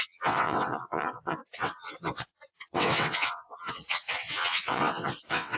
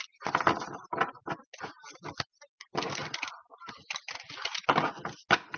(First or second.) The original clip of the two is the second